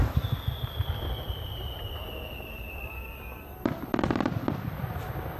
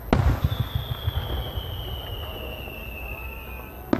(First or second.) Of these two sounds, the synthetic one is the first